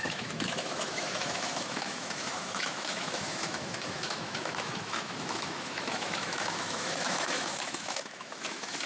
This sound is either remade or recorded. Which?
remade